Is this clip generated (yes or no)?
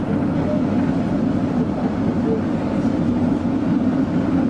no